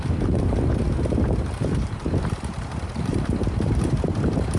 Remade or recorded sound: remade